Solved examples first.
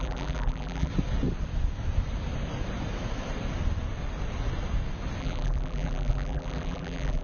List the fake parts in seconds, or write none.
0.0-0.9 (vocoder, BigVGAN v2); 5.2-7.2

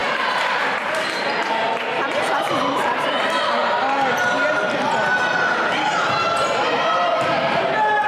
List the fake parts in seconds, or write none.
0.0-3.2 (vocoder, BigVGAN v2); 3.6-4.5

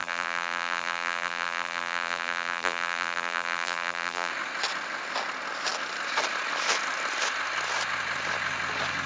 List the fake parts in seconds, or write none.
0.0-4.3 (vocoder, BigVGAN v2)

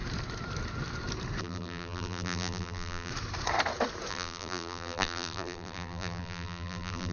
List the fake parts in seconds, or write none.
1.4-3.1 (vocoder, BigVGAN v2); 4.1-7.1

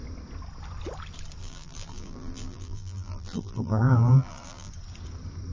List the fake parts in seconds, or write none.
1.4-4.7 (vocoder, BigVGAN v2)

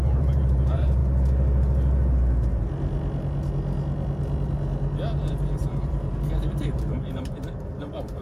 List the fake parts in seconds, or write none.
0.0-1.0 (vocoder, BigVGAN v2); 5.3-8.2